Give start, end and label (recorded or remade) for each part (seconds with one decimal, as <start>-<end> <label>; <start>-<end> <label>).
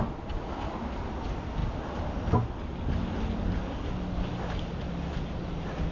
0.0-5.9 recorded